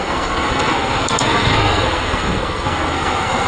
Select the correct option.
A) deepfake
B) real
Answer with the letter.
A